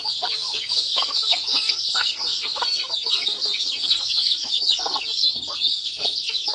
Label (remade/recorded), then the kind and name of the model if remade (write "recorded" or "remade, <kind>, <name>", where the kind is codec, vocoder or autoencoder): remade, codec, SNAC